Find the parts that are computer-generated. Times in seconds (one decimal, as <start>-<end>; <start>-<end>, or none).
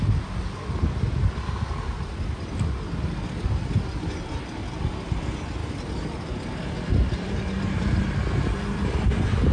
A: none